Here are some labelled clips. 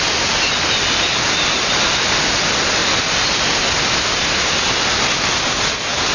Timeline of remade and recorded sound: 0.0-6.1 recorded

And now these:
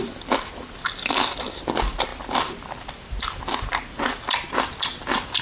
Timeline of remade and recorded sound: 0.0-5.4 recorded